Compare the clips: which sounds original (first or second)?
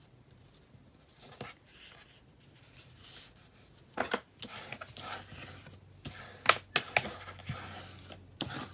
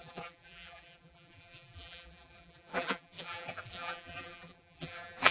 first